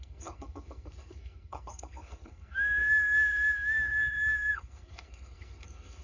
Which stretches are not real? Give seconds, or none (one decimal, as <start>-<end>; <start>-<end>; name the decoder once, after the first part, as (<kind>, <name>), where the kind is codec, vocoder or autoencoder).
0.0-6.0 (codec, SNAC)